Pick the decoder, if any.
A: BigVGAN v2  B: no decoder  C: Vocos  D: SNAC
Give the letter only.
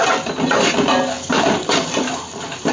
A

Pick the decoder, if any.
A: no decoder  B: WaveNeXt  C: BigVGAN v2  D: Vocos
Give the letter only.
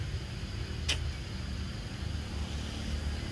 A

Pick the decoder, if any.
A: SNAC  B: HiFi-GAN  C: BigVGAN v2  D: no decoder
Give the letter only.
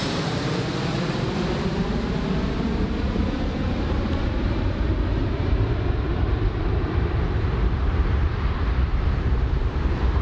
C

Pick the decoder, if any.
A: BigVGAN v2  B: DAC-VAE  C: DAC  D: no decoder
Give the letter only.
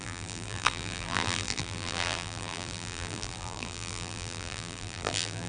A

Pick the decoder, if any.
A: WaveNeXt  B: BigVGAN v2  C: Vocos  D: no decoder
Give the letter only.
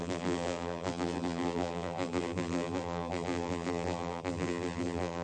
B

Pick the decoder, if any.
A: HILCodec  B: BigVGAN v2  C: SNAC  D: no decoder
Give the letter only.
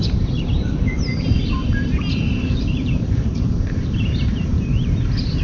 B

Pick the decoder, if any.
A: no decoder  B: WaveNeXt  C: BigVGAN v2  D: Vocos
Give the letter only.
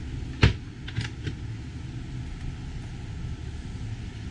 A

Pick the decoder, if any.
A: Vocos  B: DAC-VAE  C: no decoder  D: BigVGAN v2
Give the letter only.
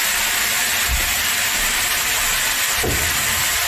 C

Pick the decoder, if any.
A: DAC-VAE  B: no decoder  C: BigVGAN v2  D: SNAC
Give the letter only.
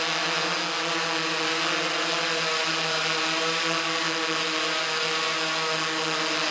B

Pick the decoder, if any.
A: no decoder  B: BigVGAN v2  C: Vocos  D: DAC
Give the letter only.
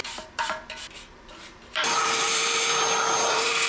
B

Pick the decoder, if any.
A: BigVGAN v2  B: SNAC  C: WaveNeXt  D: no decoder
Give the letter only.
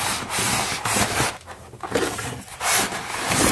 A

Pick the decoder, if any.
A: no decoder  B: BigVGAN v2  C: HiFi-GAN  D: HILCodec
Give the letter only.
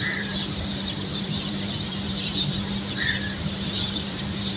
B